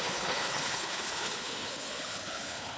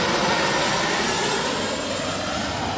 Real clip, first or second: second